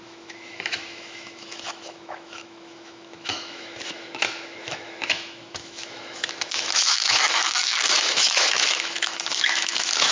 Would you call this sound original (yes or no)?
no